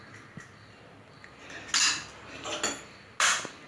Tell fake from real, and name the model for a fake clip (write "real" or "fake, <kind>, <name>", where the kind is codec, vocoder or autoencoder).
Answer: real